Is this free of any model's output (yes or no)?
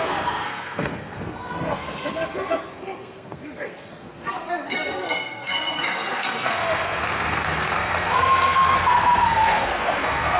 no